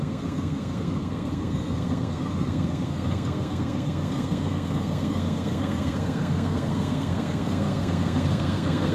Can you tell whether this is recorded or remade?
remade